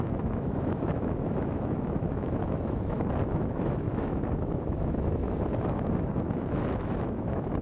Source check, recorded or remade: remade